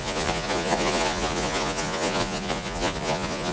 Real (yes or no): no